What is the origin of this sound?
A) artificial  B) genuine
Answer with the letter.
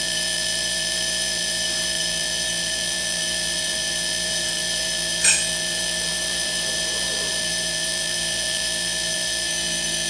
A